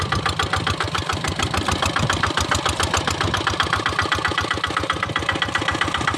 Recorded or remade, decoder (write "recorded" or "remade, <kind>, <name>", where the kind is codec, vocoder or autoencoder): recorded